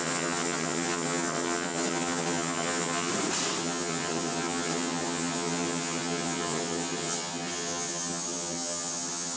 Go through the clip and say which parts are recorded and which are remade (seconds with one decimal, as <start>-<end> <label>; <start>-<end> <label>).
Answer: 0.0-3.1 remade; 3.1-3.6 recorded; 3.6-9.4 remade